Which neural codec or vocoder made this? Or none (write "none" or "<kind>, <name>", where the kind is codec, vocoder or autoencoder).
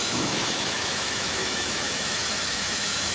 autoencoder, DAC-VAE